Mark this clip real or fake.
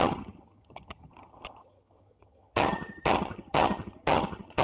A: fake